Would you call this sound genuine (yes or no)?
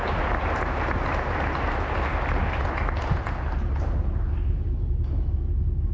yes